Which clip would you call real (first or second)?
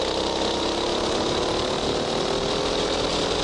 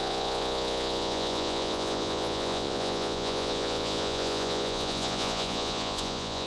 first